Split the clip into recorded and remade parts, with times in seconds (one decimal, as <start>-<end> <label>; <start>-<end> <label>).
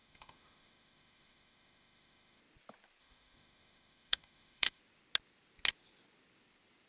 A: 0.0-2.4 remade; 2.4-3.0 recorded; 3.0-4.8 remade; 4.8-6.9 recorded